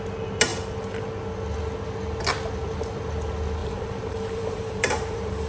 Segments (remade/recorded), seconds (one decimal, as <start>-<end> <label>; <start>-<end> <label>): 0.0-3.6 recorded; 3.6-5.5 remade